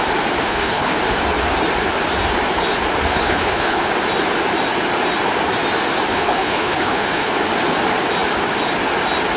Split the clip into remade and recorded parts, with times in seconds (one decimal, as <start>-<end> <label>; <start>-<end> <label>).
0.0-0.4 recorded; 0.4-1.0 remade; 1.0-3.1 recorded; 3.1-3.9 remade; 3.9-6.1 recorded; 6.1-7.3 remade; 7.3-9.4 recorded